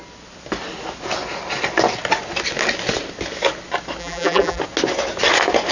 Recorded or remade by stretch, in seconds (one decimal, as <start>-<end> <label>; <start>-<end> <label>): 0.0-4.0 recorded; 4.0-4.6 remade; 4.6-5.7 recorded